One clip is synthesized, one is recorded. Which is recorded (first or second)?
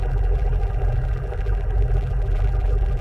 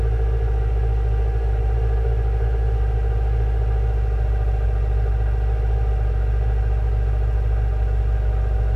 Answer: second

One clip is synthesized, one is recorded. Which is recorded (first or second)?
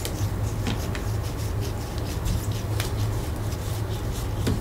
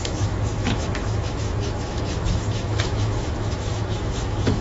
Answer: first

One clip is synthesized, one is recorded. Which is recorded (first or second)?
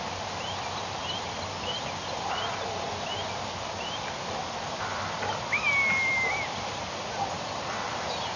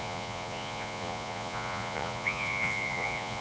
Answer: first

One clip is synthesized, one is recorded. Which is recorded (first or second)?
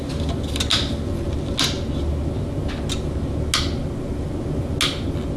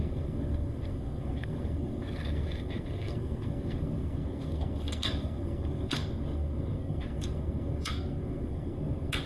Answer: first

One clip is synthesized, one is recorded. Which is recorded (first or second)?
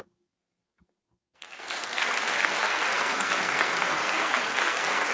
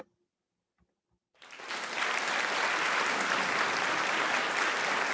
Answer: second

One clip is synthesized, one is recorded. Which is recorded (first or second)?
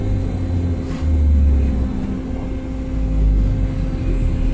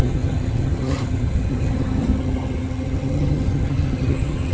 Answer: first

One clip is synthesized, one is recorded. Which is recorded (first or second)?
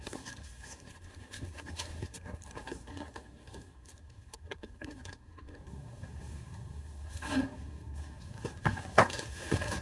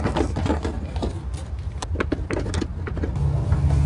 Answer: second